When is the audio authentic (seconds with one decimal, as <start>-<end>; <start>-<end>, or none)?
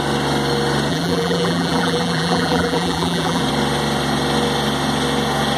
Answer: 0.0-0.9; 3.4-5.6